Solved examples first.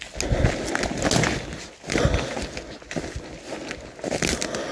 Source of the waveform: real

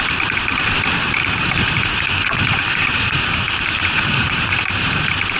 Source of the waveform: fake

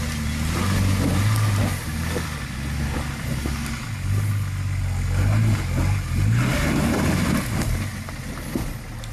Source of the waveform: real